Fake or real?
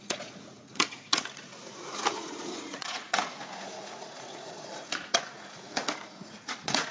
fake